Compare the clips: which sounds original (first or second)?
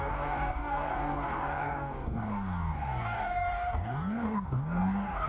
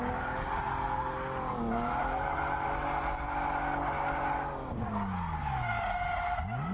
second